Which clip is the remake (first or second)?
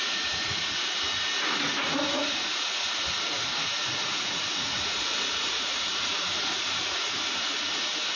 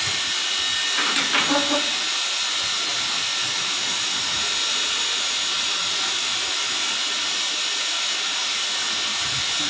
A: first